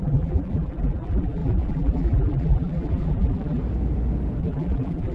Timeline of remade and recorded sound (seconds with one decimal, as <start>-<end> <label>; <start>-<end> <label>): 0.0-3.6 remade; 3.6-4.4 recorded; 4.4-5.1 remade